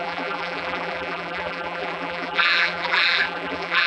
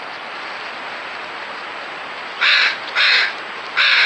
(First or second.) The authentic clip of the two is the second